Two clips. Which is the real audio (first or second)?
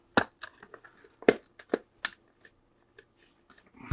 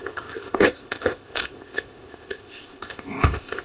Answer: first